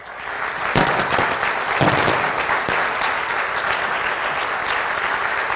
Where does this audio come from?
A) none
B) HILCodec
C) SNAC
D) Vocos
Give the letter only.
A